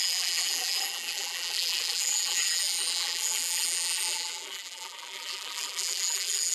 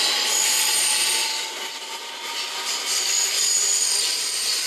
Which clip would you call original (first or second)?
second